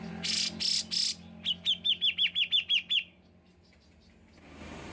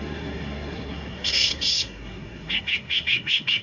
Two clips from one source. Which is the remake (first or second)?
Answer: second